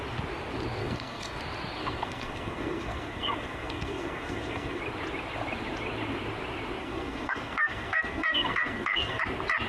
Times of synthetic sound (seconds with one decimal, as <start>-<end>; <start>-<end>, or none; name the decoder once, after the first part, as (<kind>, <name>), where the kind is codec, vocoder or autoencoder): 0.8-1.4 (codec, SNAC); 1.8-4.8; 6.8-9.2